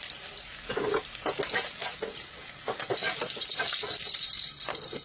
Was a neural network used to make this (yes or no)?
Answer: no